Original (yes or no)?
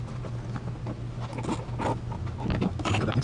yes